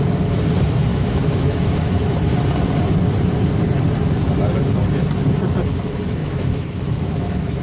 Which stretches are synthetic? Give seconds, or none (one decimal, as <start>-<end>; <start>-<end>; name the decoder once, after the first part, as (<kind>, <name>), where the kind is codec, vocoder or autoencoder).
0.9-1.9 (autoencoder, DAC-VAE); 6.2-7.6